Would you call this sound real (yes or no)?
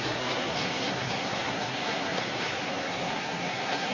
no